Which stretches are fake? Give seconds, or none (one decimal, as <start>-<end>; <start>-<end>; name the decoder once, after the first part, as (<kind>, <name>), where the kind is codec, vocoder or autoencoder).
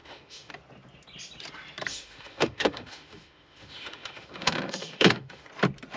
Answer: 0.0-0.5 (autoencoder, DAC-VAE); 1.9-5.5